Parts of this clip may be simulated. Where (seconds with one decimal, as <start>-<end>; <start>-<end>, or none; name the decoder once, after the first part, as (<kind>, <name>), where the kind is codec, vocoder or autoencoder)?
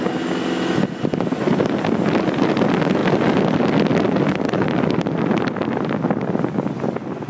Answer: none